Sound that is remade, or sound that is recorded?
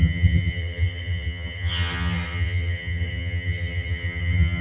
remade